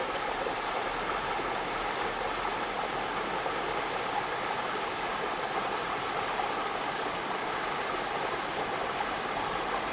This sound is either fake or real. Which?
real